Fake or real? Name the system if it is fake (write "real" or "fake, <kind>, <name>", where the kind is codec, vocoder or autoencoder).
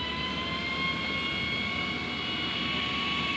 real